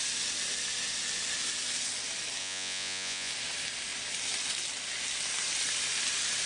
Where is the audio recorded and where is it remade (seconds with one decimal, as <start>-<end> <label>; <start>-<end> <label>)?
0.0-2.4 recorded; 2.4-3.3 remade; 3.3-6.5 recorded